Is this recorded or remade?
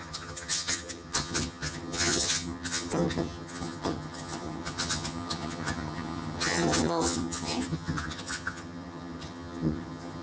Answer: remade